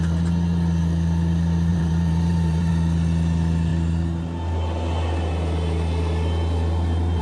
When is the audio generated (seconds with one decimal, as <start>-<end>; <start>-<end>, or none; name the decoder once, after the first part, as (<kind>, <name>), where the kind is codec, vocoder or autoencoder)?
1.7-2.7 (vocoder, BigVGAN v2)